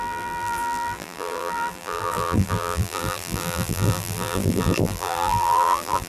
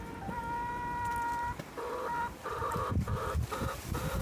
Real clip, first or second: second